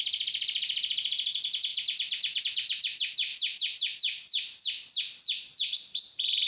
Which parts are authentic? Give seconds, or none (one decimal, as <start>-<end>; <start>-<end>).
0.0-6.5